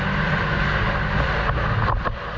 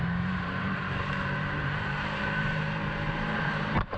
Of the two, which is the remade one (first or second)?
second